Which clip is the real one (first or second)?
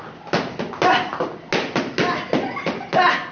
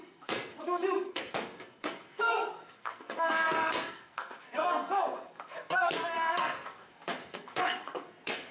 first